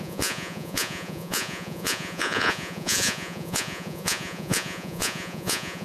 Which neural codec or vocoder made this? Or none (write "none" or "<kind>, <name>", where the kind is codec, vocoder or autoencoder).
vocoder, Vocos